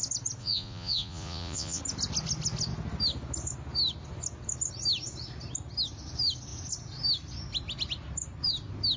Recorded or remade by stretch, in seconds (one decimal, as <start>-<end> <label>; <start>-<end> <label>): 0.0-0.4 recorded; 0.4-1.8 remade; 1.8-9.0 recorded